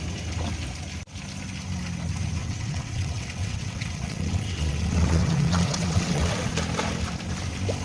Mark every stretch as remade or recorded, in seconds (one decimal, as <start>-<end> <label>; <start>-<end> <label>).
0.0-2.4 recorded; 2.4-6.5 remade; 6.5-7.8 recorded